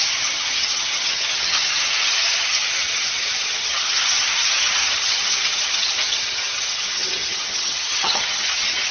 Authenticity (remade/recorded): remade